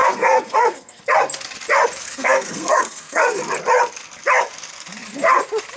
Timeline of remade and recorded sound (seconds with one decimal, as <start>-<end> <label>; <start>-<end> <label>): 0.0-1.0 remade; 1.0-2.0 recorded; 2.0-3.4 remade; 3.4-5.8 recorded

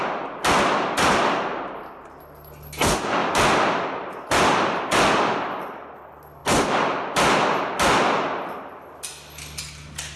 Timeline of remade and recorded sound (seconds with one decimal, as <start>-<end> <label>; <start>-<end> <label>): 0.0-10.2 recorded

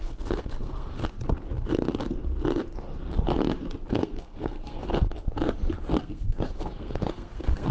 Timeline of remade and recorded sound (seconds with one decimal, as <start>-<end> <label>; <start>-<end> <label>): 0.0-1.0 remade; 1.0-3.9 recorded; 3.9-4.9 remade; 4.9-6.0 recorded; 6.0-7.7 remade

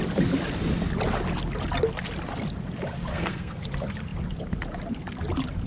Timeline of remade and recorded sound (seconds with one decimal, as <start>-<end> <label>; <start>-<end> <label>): 0.0-3.1 recorded; 3.1-3.6 remade; 3.6-5.7 recorded

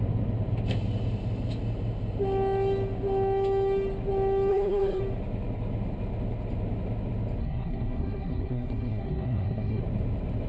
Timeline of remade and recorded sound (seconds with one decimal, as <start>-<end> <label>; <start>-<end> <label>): 0.0-4.5 recorded; 4.5-5.0 remade; 5.0-7.4 recorded; 7.4-9.8 remade; 9.8-10.5 recorded

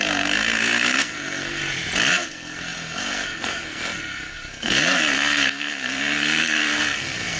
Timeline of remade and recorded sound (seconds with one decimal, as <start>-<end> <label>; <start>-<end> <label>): 0.0-1.6 remade; 1.6-2.1 recorded; 2.1-7.4 remade